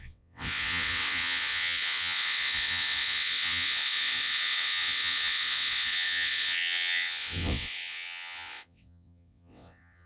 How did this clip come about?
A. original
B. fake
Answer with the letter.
B